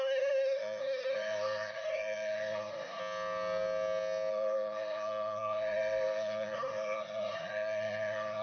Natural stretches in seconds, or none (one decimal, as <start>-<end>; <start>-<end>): 3.0-4.3